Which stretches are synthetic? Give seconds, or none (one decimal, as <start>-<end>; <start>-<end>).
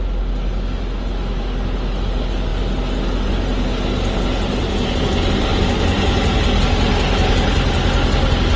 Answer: 5.5-6.5